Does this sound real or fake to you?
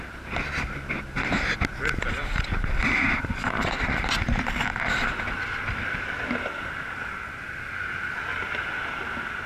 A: real